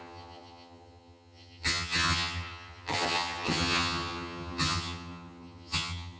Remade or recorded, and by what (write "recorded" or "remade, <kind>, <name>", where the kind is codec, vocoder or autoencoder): remade, vocoder, HiFi-GAN